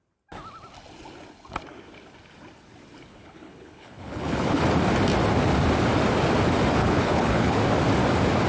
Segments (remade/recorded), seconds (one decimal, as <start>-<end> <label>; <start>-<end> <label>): 0.0-3.1 recorded; 3.1-4.6 remade; 4.6-6.8 recorded; 6.8-7.6 remade; 7.6-8.5 recorded